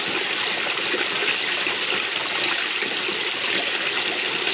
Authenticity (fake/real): real